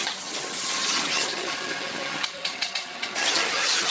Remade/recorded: remade